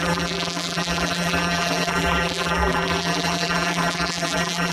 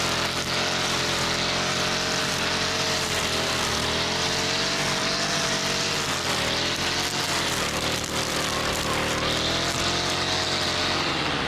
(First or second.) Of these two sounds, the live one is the second